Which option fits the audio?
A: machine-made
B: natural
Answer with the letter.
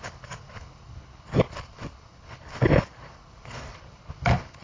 A